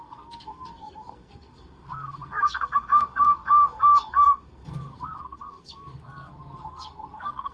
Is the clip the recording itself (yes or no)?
no